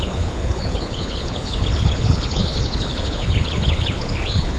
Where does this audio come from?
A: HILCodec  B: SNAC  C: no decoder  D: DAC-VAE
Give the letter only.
A